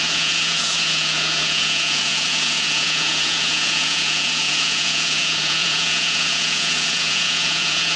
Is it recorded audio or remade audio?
remade